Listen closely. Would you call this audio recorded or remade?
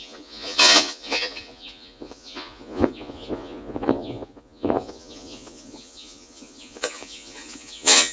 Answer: remade